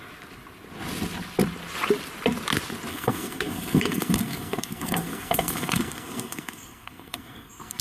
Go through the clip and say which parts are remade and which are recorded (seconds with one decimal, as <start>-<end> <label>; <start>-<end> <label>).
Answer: 0.0-2.9 recorded; 2.9-7.8 remade